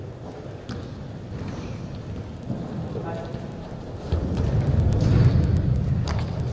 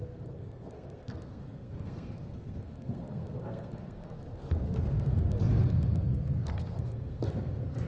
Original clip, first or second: first